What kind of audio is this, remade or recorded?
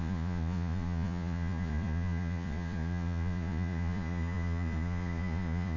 remade